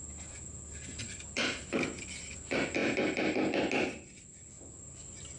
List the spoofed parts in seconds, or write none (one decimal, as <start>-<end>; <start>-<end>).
none